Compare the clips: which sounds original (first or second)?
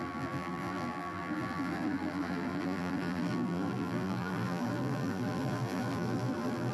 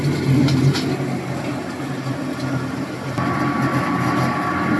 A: second